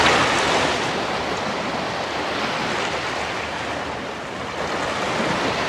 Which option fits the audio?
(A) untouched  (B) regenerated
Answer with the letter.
A